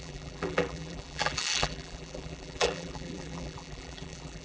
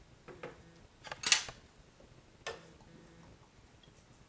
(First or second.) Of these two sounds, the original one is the second